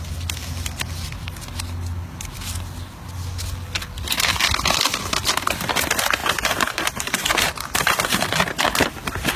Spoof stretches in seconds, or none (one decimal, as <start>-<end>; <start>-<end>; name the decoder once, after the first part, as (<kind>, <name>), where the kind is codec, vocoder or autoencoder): 6.2-8.0 (vocoder, BigVGAN v2)